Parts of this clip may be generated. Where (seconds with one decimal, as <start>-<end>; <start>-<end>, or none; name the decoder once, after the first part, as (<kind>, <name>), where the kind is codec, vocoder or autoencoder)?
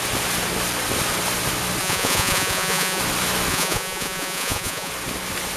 1.8-3.0 (vocoder, Vocos); 3.5-4.9